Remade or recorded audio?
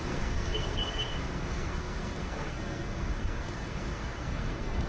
remade